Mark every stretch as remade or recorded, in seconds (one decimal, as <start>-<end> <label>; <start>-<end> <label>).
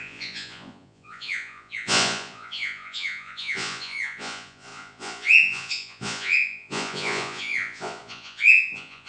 0.0-9.1 remade